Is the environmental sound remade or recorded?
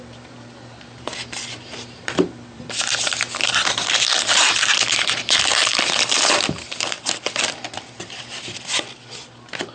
remade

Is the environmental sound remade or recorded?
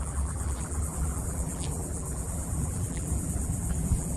remade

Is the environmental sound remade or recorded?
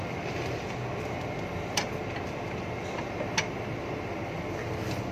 recorded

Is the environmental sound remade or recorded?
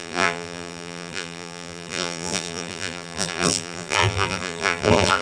remade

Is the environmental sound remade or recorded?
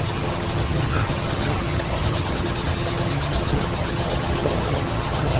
remade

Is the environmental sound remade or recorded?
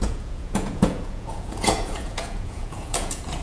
remade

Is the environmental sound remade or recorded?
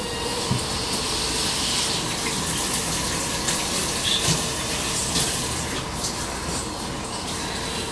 recorded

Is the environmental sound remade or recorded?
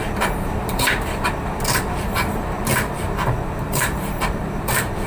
remade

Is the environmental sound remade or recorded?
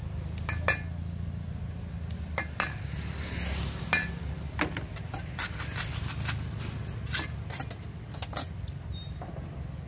recorded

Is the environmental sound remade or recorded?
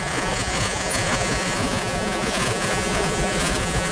remade